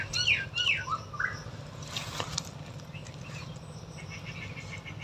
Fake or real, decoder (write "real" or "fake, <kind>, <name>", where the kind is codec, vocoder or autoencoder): real